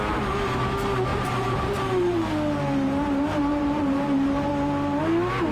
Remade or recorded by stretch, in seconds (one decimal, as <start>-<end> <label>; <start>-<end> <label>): 0.0-1.1 recorded; 1.1-2.3 remade; 2.3-3.5 recorded; 3.5-4.5 remade; 4.5-5.5 recorded